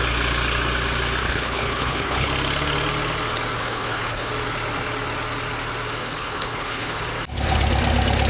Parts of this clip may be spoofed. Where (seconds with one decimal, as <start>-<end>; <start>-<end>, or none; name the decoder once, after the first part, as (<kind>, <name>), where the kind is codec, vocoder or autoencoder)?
1.2-2.3 (codec, HILCodec); 3.6-4.3; 6.0-7.0